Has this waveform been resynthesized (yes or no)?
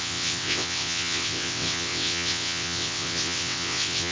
yes